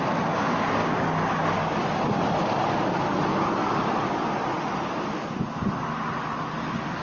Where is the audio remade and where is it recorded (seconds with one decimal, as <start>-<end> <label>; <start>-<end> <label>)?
0.0-0.8 recorded; 0.8-1.7 remade; 1.7-2.6 recorded; 2.6-3.1 remade; 3.1-3.6 recorded; 3.6-4.2 remade; 4.2-7.0 recorded